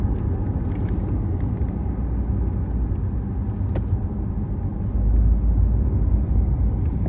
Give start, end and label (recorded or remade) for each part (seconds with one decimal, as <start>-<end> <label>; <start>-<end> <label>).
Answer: 0.0-7.1 recorded